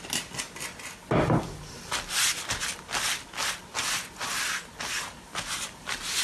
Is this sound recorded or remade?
recorded